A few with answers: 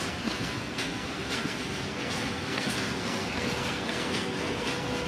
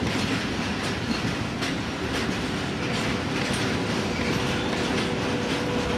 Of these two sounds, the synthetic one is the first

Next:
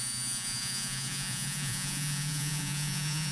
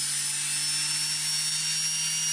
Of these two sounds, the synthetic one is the first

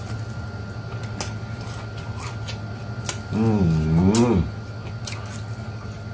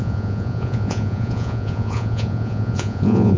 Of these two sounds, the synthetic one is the second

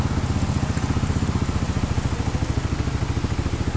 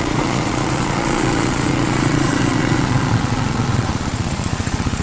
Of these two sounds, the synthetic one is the second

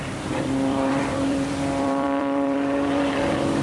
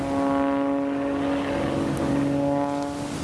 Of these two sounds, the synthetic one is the first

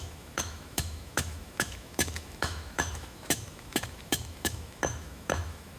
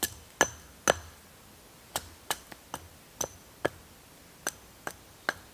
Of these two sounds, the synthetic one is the first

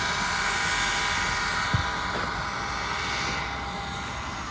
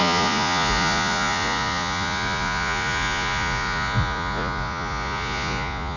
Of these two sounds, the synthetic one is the second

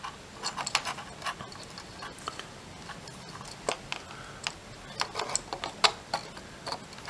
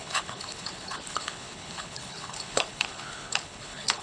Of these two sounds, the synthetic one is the second